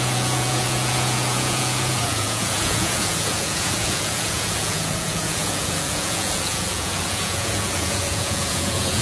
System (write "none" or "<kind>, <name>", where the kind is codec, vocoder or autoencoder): vocoder, Vocos